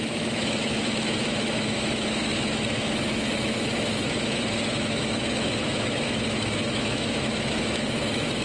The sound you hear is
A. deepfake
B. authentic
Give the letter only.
A